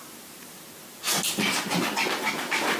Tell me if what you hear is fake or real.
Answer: real